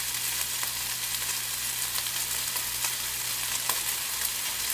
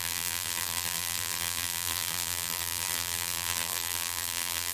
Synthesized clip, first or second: second